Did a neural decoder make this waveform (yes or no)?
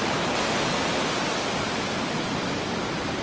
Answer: no